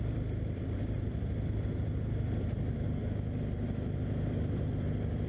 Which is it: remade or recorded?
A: remade